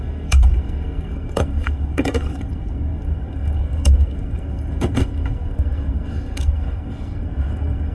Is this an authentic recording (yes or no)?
no